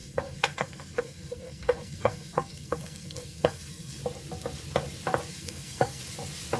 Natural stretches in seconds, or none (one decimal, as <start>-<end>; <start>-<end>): 4.0-5.3; 6.0-6.6